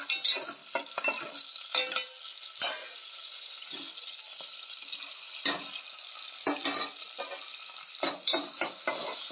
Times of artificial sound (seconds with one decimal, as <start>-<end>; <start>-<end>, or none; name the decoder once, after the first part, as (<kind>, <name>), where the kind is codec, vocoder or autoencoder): 2.8-3.8 (vocoder, Vocos)